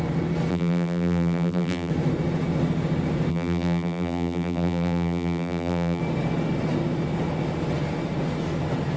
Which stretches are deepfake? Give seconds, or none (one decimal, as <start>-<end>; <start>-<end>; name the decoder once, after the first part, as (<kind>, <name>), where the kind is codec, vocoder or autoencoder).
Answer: 0.5-1.9 (vocoder, BigVGAN v2); 3.3-6.0